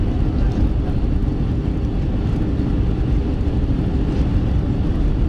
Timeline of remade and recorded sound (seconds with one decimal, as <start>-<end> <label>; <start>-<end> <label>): 0.0-5.3 recorded